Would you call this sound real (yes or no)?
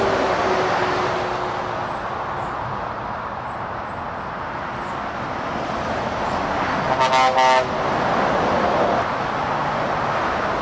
yes